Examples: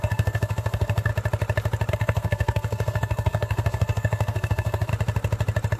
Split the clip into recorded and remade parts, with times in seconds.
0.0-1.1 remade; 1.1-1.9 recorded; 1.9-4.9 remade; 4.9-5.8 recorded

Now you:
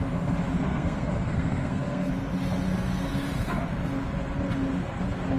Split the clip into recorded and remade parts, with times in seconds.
0.0-0.7 recorded; 0.7-2.1 remade; 2.1-5.4 recorded

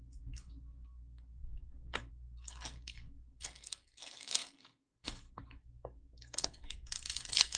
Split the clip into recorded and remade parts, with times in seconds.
0.0-7.6 remade